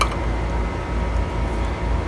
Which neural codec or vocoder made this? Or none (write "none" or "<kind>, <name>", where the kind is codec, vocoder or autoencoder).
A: none